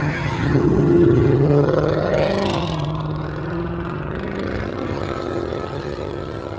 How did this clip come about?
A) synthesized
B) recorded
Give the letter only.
A